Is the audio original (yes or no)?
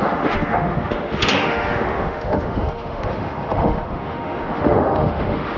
no